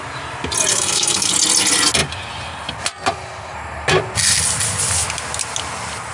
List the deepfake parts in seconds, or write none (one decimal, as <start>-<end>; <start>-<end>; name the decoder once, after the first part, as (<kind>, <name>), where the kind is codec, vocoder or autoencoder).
0.7-1.3 (codec, SNAC)